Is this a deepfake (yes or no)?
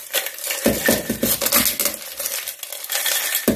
no